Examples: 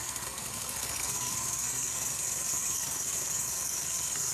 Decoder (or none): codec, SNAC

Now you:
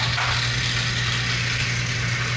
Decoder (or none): none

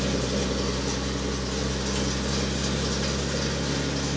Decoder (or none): none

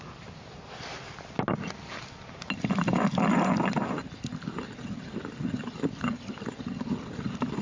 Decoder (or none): none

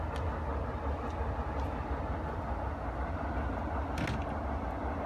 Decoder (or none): none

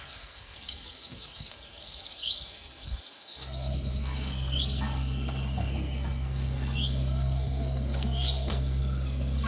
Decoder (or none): codec, SNAC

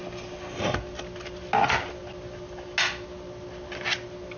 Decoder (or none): none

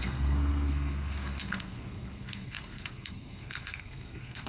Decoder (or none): codec, SNAC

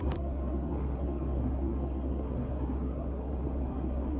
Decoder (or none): codec, SNAC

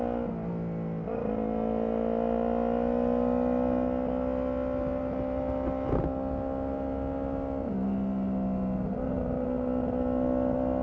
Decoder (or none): none